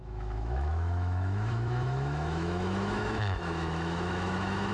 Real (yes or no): no